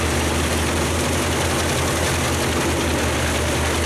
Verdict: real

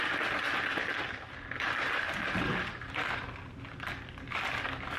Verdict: real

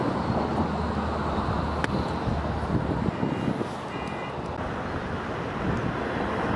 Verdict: real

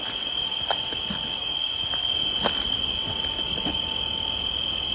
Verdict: real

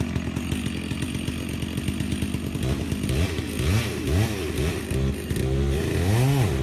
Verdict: real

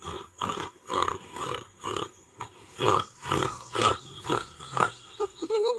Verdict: fake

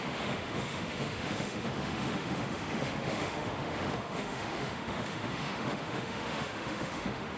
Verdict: fake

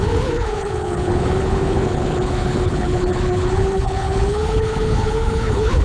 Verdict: fake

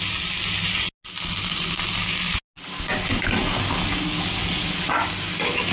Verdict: real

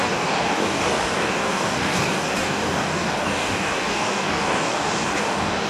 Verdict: fake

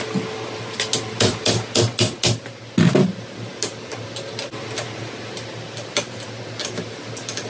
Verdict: real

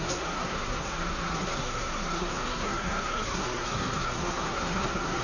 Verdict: fake